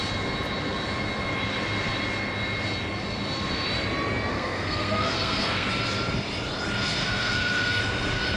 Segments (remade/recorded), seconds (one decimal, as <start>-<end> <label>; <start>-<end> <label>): 0.0-4.3 recorded; 4.3-5.7 remade; 5.7-7.0 recorded; 7.0-7.8 remade; 7.8-8.4 recorded